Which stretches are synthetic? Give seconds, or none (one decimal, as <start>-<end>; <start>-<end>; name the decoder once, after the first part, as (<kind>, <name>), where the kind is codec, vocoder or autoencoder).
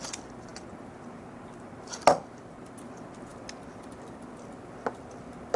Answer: none